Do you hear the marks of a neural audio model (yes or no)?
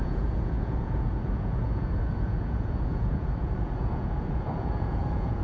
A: yes